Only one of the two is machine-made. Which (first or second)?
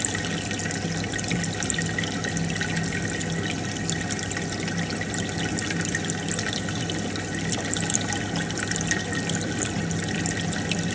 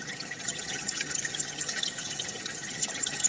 second